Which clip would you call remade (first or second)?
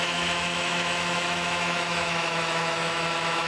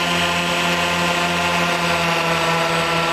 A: first